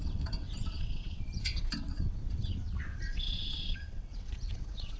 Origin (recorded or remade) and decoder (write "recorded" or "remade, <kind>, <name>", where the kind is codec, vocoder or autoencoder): remade, vocoder, WaveNeXt